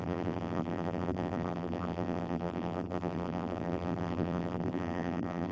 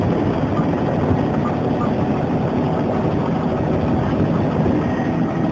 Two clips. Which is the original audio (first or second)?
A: second